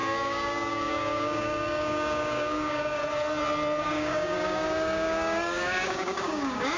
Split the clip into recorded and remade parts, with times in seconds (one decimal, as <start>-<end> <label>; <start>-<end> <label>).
0.0-3.0 remade; 3.0-3.8 recorded; 3.8-6.8 remade